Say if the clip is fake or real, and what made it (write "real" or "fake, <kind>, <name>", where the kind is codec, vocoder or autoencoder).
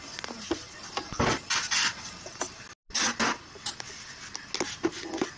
real